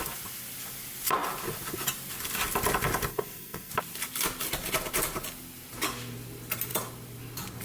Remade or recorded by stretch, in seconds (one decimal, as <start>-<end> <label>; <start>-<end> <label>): 0.0-3.1 recorded; 3.1-3.7 remade; 3.7-7.6 recorded

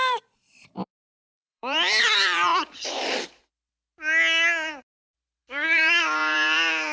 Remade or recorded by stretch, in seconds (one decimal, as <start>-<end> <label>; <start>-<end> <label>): 0.0-2.5 remade; 2.5-4.8 recorded; 4.8-6.9 remade

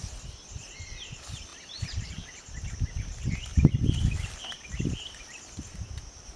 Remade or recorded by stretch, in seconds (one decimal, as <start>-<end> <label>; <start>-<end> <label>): 0.0-1.5 recorded; 1.5-2.1 remade; 2.1-3.5 recorded; 3.5-6.4 remade